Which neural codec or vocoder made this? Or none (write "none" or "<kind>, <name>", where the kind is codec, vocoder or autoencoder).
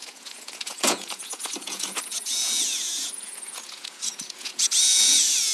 vocoder, Vocos